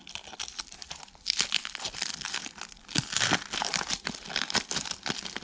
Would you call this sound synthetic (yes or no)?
no